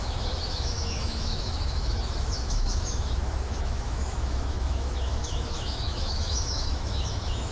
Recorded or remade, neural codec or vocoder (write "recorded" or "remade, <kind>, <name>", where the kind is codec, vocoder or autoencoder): remade, autoencoder, DAC-VAE